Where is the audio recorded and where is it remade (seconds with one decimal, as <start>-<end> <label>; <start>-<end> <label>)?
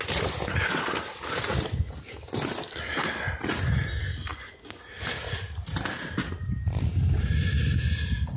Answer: 0.0-4.3 recorded; 4.3-4.9 remade; 4.9-8.4 recorded